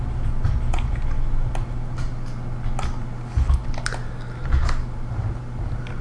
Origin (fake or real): real